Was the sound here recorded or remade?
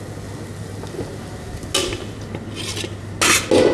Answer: recorded